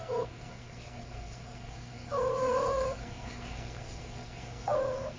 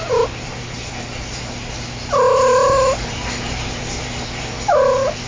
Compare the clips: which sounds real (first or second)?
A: second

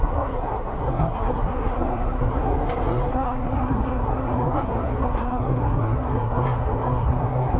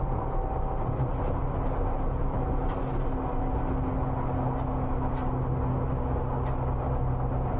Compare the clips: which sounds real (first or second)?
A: second